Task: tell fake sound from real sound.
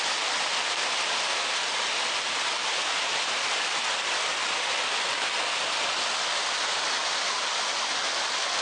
real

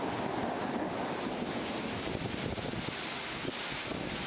real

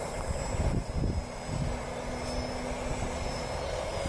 real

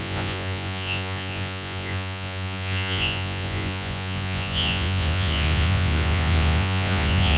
fake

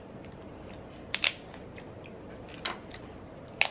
real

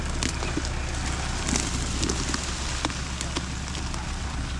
real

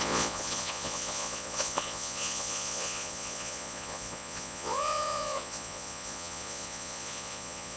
fake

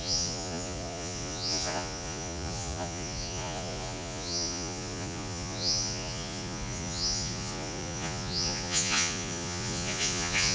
fake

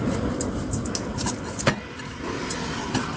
real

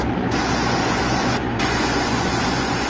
fake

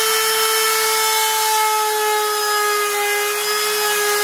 real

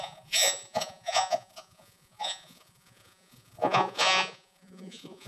fake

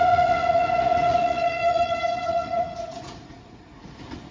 fake